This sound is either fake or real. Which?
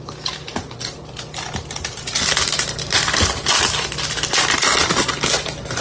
real